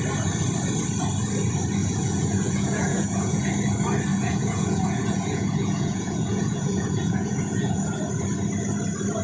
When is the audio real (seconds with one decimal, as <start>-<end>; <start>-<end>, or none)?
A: 0.0-1.8; 3.5-4.1; 8.0-9.2